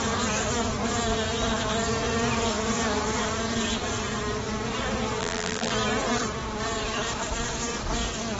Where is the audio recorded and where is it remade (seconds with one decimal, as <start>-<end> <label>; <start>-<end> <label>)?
0.0-5.2 recorded; 5.2-5.7 remade; 5.7-8.4 recorded